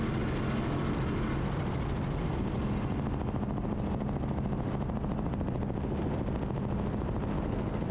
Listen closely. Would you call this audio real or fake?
real